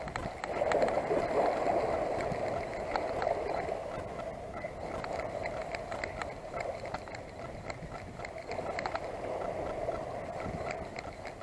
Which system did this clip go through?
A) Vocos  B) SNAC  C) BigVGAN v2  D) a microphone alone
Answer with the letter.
D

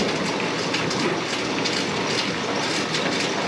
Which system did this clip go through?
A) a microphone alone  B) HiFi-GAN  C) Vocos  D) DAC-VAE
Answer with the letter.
A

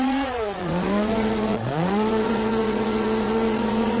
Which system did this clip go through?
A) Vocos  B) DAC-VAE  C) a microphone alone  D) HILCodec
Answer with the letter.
A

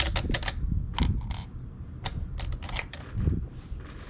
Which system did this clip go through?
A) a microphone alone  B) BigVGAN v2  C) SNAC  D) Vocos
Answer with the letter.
A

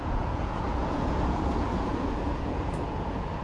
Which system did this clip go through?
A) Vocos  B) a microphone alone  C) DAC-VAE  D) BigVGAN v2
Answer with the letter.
A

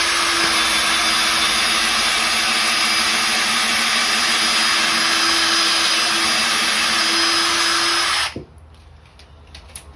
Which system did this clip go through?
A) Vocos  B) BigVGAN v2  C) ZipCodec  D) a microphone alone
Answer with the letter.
D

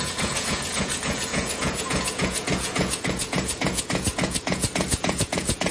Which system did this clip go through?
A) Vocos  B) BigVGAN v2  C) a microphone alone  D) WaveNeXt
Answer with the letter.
A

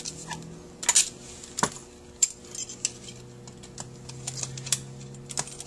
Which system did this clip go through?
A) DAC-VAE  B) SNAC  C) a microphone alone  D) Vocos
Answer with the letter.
C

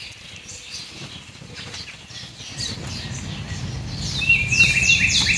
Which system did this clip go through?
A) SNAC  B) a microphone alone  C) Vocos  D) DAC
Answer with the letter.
B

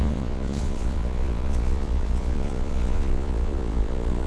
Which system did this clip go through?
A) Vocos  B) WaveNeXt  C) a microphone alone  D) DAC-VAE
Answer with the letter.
A